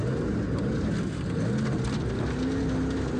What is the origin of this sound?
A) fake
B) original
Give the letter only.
B